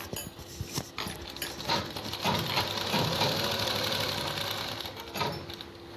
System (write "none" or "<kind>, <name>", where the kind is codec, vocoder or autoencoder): none